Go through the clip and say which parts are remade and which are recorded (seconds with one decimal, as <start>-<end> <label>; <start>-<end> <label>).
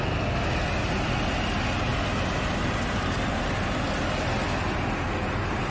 0.0-5.7 recorded